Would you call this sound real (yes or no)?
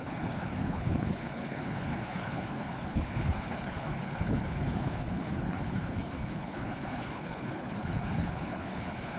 no